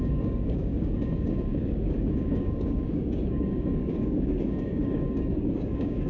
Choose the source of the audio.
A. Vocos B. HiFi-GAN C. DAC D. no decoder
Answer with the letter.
C